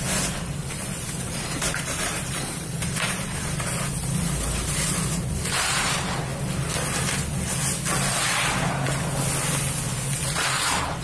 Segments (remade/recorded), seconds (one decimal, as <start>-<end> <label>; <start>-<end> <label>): 0.0-6.3 remade; 6.3-10.6 recorded; 10.6-11.0 remade